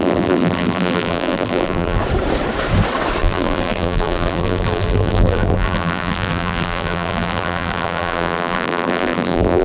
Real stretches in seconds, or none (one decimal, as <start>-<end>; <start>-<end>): 2.0-3.2